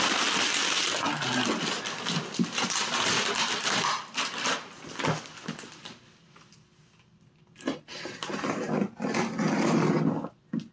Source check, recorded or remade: recorded